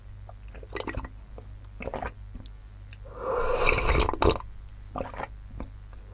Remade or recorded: recorded